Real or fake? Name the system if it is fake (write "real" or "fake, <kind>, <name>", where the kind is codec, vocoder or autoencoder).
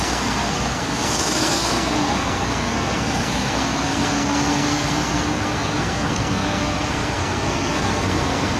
fake, codec, SNAC